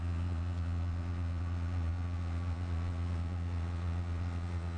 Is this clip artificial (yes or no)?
yes